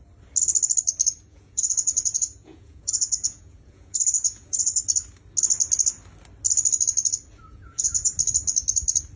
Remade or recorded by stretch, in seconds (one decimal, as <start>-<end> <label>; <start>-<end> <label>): 0.0-1.3 recorded; 1.3-4.8 remade; 4.8-7.4 recorded; 7.4-8.1 remade; 8.1-9.2 recorded